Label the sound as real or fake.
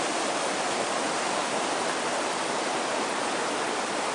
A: real